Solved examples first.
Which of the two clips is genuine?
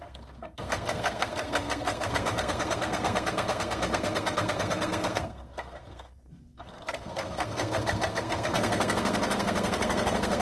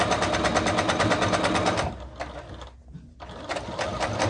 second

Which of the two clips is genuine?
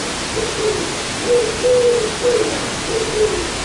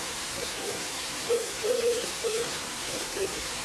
first